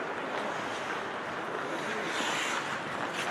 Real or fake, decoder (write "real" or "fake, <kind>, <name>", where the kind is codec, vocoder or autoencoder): real